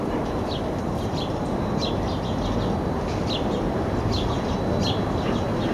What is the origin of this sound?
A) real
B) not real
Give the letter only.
A